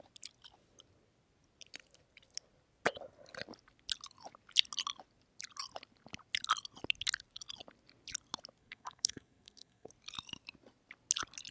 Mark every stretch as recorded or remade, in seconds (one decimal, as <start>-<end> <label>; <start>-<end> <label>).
0.0-8.6 recorded; 8.6-9.9 remade; 9.9-11.5 recorded